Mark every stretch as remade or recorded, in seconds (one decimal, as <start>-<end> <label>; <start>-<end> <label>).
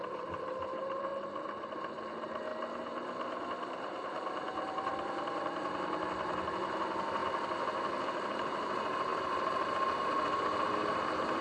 0.0-1.1 remade; 1.1-1.7 recorded; 1.7-2.5 remade; 2.5-3.5 recorded; 3.5-7.2 remade; 7.2-8.3 recorded; 8.3-11.4 remade